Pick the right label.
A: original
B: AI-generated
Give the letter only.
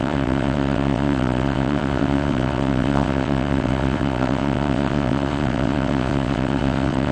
B